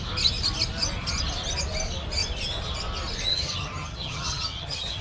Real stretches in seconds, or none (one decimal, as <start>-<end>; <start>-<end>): 0.0-3.3

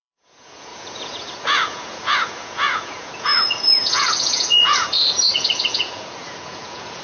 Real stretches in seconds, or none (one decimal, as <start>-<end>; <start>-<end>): none